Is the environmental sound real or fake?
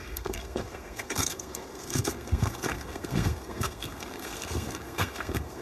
fake